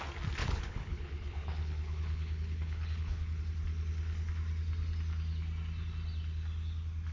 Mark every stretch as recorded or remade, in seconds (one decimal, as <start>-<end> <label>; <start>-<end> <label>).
0.0-0.4 recorded; 0.4-3.4 remade; 3.4-7.1 recorded